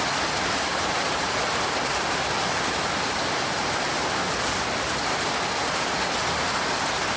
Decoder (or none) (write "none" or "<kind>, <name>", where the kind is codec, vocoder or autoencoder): none